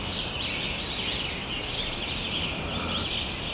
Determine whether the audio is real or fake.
real